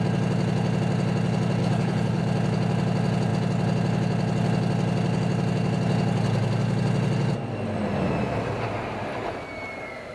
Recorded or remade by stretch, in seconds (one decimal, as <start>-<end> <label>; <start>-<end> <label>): 0.0-1.6 recorded; 1.6-2.2 remade; 2.2-10.1 recorded